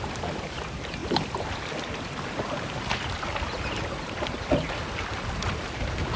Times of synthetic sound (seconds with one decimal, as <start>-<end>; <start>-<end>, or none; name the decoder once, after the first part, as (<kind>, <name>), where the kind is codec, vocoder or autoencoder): none